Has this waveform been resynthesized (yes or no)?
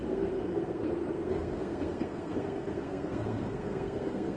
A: yes